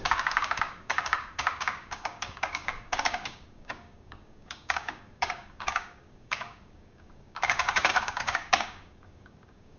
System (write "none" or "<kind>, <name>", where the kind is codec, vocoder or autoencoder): codec, DAC